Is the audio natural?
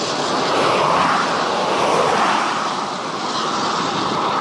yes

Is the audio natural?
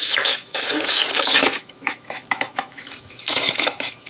no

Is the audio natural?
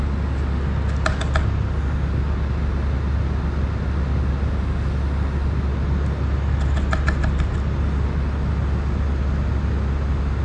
yes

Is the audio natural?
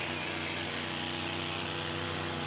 yes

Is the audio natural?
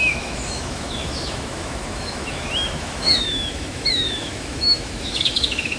no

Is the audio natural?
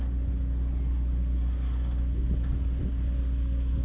yes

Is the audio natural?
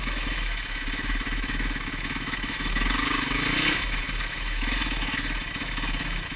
no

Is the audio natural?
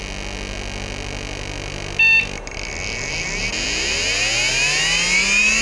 yes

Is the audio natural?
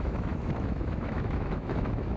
no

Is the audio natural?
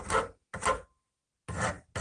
yes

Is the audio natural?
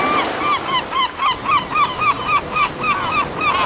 yes